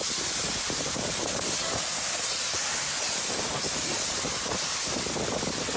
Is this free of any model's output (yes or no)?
yes